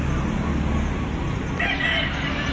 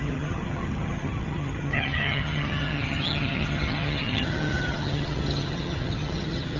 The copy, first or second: second